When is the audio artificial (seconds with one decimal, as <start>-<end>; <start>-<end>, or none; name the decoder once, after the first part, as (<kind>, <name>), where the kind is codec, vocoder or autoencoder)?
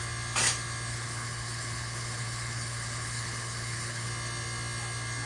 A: 0.9-4.1 (codec, HILCodec)